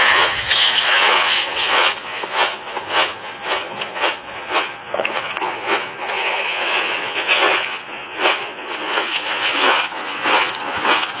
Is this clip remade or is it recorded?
remade